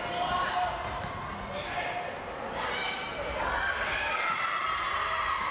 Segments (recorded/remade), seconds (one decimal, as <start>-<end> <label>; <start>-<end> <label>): 0.0-5.5 recorded